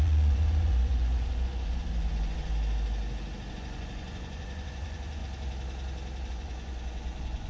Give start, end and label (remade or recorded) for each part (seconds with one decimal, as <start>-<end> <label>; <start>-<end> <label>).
0.0-2.5 remade; 2.5-3.5 recorded; 3.5-5.2 remade; 5.2-6.3 recorded; 6.3-7.5 remade